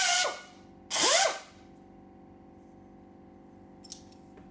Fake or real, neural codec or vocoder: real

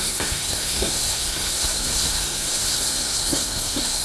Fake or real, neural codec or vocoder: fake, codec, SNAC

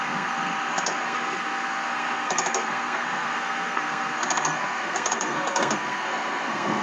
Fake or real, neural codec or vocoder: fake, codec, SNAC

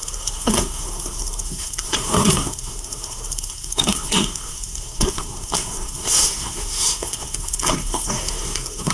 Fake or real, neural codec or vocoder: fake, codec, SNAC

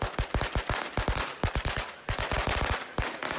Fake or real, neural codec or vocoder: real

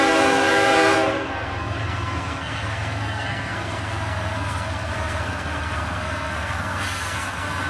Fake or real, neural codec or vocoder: fake, codec, SNAC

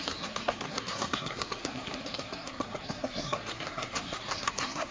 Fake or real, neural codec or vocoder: fake, codec, SNAC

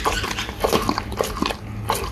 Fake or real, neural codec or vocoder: real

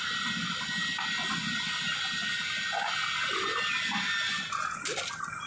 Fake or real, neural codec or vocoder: real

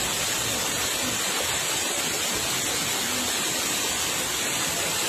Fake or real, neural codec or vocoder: real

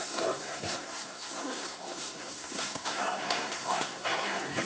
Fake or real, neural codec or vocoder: fake, codec, SNAC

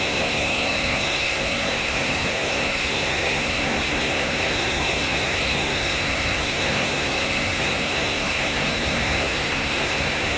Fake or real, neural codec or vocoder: fake, codec, SNAC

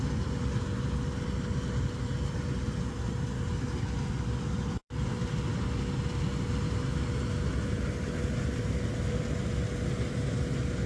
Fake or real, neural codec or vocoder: real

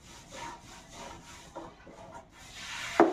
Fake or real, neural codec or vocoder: real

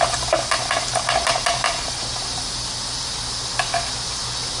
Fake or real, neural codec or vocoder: real